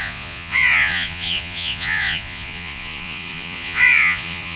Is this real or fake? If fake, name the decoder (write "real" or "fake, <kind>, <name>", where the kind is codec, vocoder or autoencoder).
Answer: fake, vocoder, Vocos